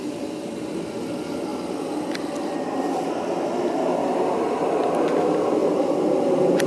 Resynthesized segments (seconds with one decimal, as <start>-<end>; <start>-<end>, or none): 5.6-6.2